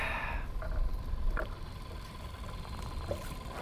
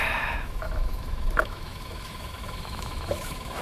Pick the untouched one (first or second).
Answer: first